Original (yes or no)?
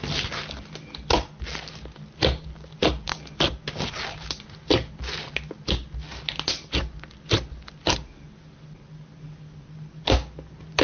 yes